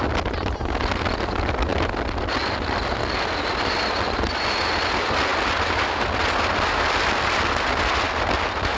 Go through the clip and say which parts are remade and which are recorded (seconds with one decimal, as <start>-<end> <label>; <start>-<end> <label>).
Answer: 0.0-8.8 recorded